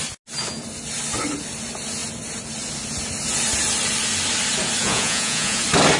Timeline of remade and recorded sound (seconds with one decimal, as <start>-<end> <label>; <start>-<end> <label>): 0.0-4.8 recorded; 4.8-5.6 remade; 5.6-6.0 recorded